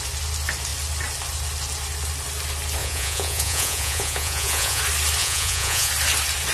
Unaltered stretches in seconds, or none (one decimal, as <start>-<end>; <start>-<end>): 0.0-2.8; 4.8-5.2; 5.9-6.5